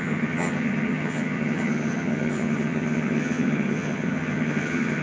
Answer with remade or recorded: remade